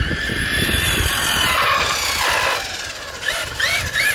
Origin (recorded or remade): recorded